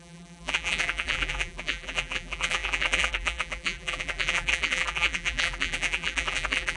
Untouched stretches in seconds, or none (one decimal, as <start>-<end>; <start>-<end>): none